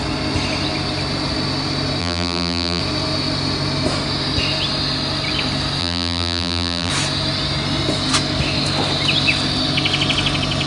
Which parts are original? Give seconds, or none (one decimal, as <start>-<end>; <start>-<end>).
0.0-2.0; 2.8-5.8; 6.9-10.7